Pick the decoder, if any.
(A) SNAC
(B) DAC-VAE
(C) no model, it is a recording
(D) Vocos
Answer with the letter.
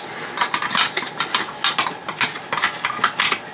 C